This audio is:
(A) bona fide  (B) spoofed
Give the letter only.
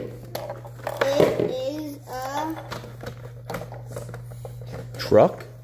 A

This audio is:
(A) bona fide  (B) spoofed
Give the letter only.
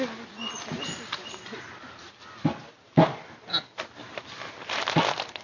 A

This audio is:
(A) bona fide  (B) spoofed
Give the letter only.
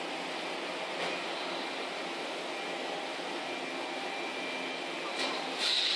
A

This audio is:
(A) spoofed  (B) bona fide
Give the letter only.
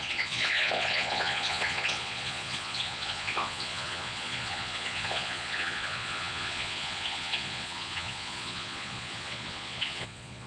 A